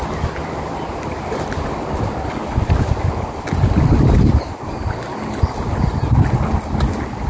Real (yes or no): yes